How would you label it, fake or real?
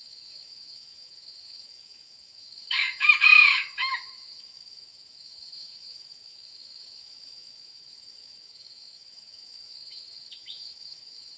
fake